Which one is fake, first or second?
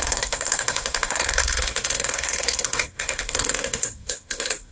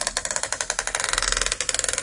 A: first